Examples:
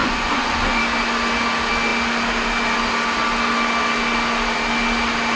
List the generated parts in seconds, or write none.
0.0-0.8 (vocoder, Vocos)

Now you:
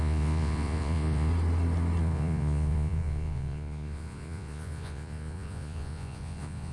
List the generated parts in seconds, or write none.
0.0-1.3 (vocoder, Vocos); 2.0-6.7

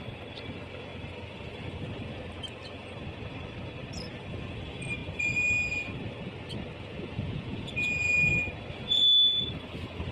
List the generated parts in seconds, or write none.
6.9-7.7 (vocoder, Vocos)

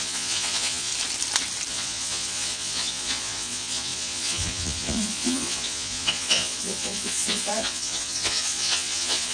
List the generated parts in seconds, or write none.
0.0-0.9 (vocoder, Vocos); 1.7-9.3

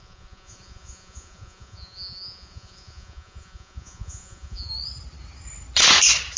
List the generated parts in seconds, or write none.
0.0-4.7 (vocoder, Vocos)

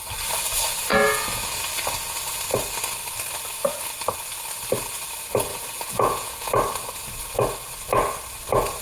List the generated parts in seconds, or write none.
0.9-1.4 (vocoder, Vocos); 5.5-6.5